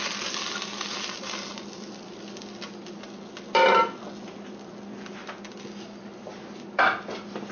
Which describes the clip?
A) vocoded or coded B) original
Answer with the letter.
B